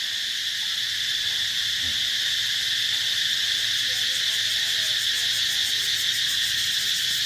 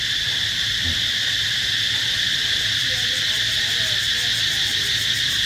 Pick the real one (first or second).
first